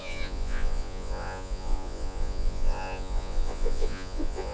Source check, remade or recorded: remade